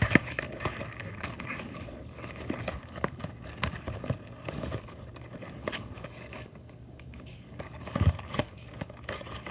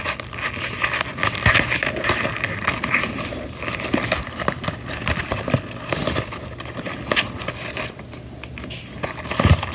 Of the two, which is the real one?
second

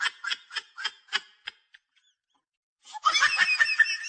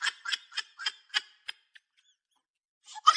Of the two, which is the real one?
second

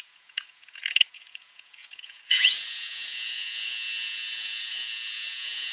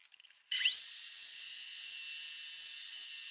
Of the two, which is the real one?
second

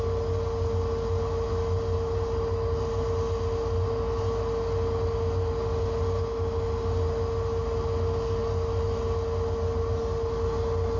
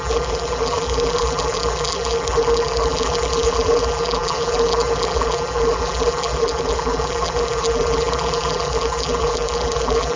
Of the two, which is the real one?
first